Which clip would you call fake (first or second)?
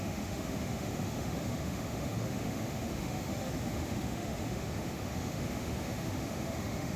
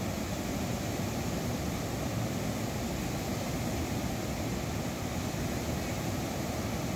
first